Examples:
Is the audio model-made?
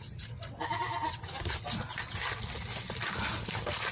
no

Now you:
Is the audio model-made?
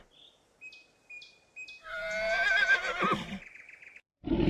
no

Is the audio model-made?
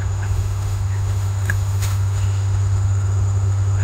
yes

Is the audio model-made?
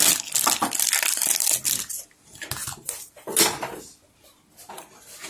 no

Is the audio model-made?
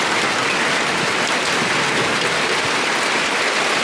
no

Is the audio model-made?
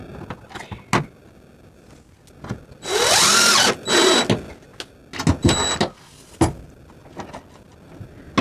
no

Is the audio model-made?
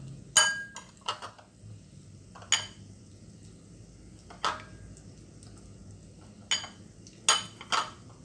no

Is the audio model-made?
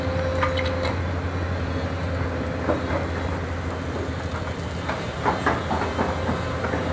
no